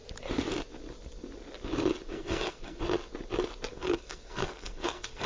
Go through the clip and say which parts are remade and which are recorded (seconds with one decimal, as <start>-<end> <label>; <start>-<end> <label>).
0.0-2.1 recorded; 2.1-2.8 remade; 2.8-3.7 recorded; 3.7-5.3 remade